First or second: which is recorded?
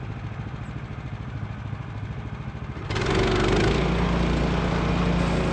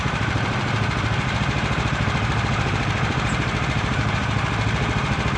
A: first